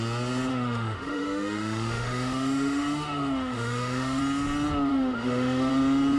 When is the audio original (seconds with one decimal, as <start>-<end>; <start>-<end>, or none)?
0.0-0.5; 4.2-4.9; 5.7-6.2